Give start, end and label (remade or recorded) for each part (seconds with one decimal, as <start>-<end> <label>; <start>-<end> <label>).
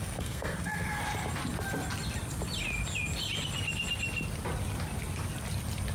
0.0-1.0 remade; 1.0-5.9 recorded